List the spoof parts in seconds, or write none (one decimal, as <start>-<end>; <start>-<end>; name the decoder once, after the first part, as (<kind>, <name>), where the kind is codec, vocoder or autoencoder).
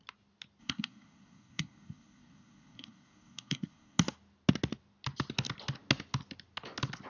0.6-4.0 (codec, SNAC)